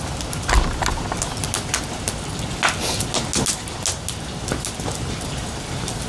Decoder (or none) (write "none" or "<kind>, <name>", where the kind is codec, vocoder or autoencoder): none